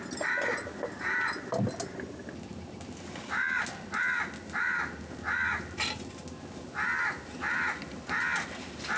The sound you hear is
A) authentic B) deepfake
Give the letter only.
A